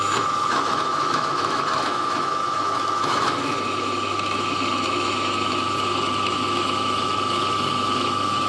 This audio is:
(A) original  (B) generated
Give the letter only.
B